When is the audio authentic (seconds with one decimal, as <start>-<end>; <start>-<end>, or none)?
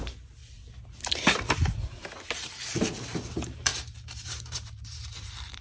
0.4-3.3